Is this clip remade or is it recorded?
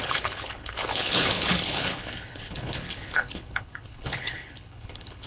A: remade